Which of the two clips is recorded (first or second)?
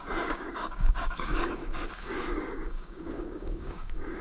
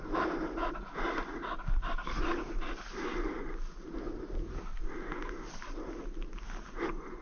second